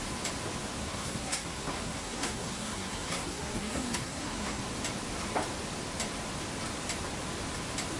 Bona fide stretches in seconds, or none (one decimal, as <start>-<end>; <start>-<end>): 0.0-0.8; 4.6-8.0